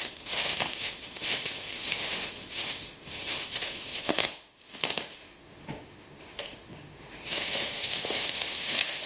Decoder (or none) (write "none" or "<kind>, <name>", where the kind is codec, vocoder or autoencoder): autoencoder, DAC-VAE